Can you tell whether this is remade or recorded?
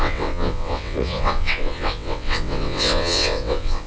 remade